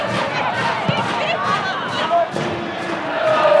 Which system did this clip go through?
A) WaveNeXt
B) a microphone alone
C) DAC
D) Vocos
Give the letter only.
B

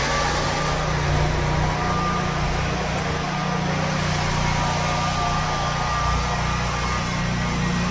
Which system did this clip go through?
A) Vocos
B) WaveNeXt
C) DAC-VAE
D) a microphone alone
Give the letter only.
D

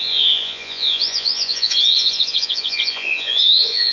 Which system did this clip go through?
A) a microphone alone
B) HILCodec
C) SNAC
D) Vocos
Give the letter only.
D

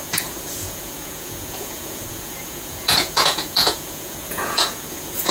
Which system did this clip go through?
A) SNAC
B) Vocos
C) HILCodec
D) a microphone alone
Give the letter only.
B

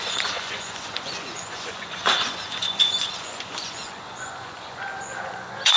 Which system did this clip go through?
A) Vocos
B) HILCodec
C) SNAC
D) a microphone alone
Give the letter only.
A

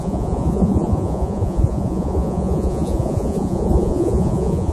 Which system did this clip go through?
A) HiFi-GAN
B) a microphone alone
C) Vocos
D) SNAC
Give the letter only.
C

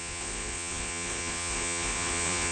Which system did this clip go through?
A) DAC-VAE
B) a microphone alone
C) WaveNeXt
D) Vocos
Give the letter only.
D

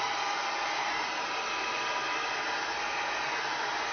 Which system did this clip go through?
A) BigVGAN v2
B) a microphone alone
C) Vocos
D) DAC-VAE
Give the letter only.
B